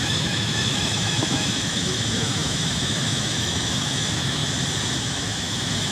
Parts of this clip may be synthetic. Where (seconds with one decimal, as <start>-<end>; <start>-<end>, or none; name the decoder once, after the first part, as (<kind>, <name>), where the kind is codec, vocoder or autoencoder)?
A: 0.0-4.4 (autoencoder, DAC-VAE); 5.0-5.9